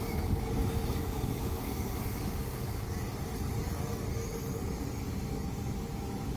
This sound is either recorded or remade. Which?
remade